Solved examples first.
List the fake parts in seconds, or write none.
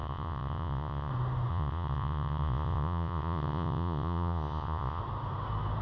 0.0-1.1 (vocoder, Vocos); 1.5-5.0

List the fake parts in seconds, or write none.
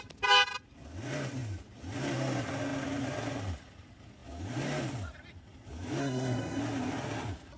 6.0-6.6 (codec, SNAC)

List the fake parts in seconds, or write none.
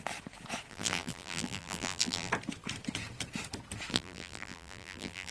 0.7-2.3 (vocoder, BigVGAN v2); 3.9-5.3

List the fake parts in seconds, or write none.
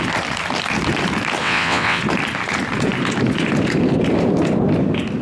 1.4-2.0 (vocoder, WaveNeXt)